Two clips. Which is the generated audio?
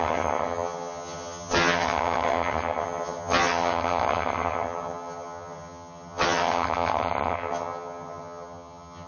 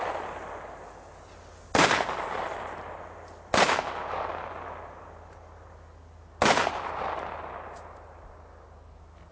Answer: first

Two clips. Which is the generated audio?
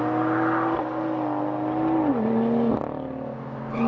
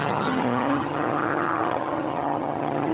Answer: second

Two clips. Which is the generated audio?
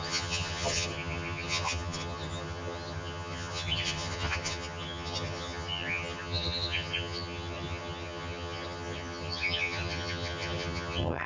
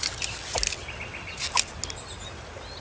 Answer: first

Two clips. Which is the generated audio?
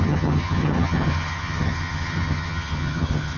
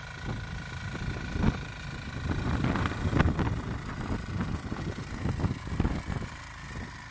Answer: first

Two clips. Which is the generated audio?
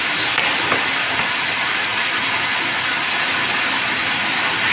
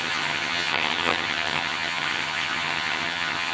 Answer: second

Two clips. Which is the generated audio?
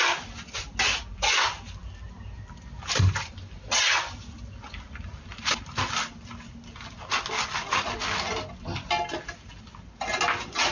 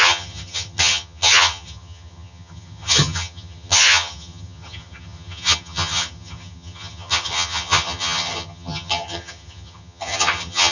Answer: second